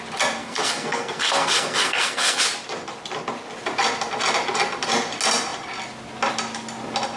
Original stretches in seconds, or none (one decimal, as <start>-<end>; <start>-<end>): 0.0-0.4; 2.4-7.2